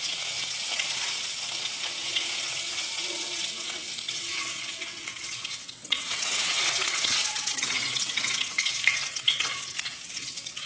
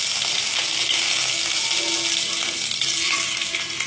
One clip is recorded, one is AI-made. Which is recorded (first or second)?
second